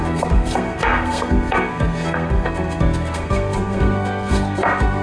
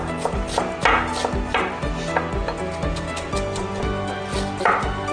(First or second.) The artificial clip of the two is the first